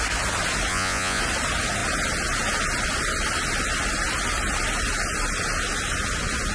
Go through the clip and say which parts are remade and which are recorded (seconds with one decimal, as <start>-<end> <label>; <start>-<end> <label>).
0.0-0.7 recorded; 0.7-1.2 remade; 1.2-6.5 recorded